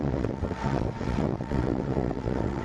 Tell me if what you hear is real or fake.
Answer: fake